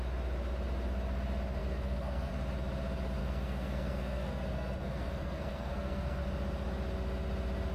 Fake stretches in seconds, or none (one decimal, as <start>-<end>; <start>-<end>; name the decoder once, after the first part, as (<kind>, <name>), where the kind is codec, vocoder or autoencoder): 1.6-2.3 (codec, SNAC); 3.2-6.2